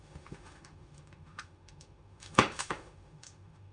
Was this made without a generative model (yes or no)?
no